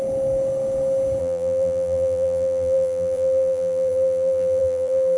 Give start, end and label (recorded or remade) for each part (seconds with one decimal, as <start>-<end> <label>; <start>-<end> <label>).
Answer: 0.0-1.2 recorded; 1.2-5.2 remade